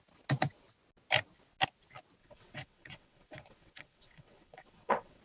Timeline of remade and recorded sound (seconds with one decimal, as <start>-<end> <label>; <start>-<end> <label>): 0.0-2.2 recorded; 2.2-5.2 remade